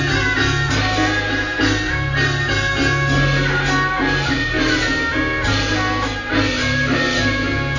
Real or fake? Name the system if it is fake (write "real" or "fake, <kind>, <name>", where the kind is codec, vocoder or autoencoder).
real